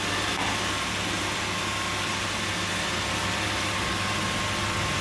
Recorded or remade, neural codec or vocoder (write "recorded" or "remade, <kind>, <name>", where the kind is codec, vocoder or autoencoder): recorded